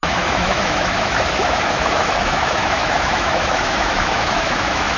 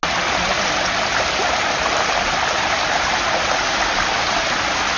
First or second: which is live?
second